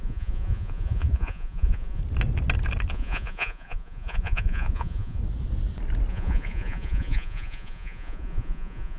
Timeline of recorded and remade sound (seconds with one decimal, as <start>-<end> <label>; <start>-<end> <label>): 0.0-2.0 remade; 2.0-2.9 recorded; 2.9-5.2 remade; 5.2-6.1 recorded; 6.1-9.0 remade